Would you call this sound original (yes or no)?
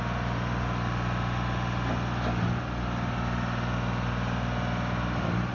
yes